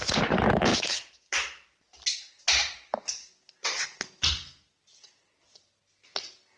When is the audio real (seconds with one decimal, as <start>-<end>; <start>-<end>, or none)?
0.0-0.7; 1.3-6.6